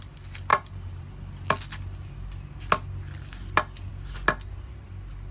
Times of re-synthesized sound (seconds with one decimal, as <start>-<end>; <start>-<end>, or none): 0.5-1.1